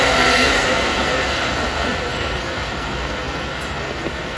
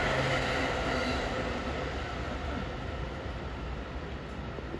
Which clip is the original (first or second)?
second